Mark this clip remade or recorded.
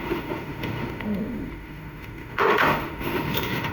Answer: remade